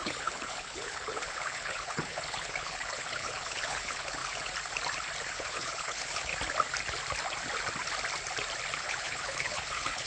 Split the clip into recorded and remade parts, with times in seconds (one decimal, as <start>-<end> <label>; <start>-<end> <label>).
0.0-4.2 remade; 4.2-5.3 recorded; 5.3-6.3 remade; 6.3-8.8 recorded; 8.8-10.1 remade